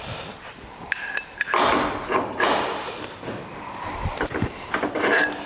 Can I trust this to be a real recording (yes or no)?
yes